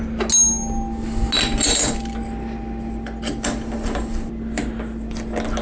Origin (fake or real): real